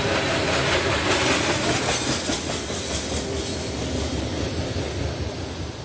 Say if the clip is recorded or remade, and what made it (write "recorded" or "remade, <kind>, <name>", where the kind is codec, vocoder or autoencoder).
recorded